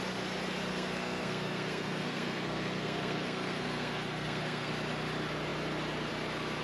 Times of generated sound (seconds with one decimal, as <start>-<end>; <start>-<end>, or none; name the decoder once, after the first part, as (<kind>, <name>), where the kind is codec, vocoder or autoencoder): 0.7-4.7 (codec, SNAC)